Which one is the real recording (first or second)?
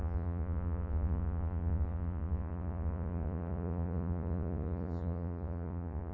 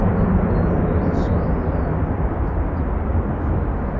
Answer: second